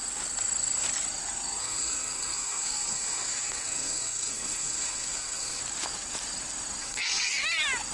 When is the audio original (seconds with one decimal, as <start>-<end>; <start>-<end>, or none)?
0.0-1.6; 5.6-6.8; 7.3-7.9